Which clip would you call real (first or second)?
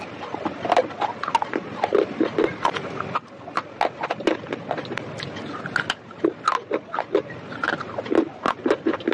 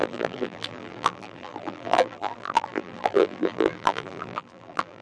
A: first